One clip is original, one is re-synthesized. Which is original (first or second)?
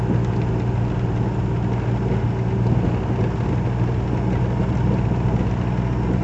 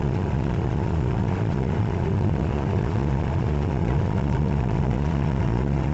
first